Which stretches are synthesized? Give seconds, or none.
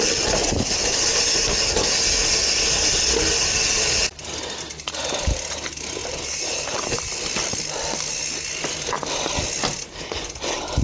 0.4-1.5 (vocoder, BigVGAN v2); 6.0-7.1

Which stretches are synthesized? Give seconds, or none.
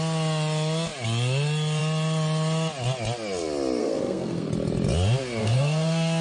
3.8-4.5 (codec, SNAC); 5.4-6.2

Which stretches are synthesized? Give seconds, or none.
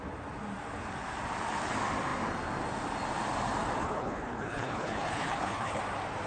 3.8-5.8 (codec, HILCodec)